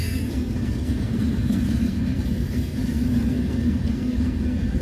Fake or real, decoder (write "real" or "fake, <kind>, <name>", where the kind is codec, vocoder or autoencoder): fake, codec, SNAC